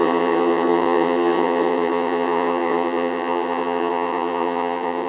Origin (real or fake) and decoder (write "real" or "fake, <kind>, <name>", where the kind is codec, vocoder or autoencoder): fake, vocoder, HiFi-GAN